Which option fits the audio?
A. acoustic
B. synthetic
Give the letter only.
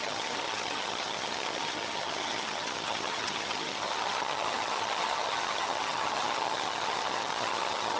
B